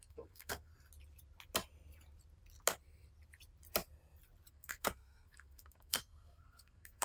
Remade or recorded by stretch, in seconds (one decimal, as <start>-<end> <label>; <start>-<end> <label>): 0.0-0.7 remade; 0.7-4.5 recorded; 4.5-7.0 remade